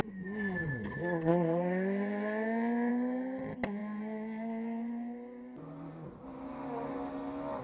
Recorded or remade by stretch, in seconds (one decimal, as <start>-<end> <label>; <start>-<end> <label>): 0.0-7.6 recorded